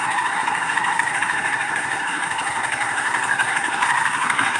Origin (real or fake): fake